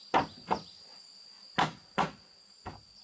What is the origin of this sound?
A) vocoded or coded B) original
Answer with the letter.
B